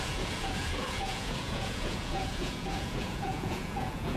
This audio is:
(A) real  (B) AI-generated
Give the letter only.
B